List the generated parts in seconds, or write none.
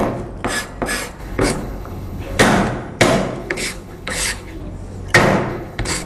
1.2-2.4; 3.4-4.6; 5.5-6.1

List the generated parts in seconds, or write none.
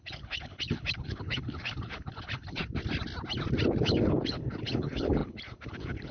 0.0-2.6; 3.8-6.1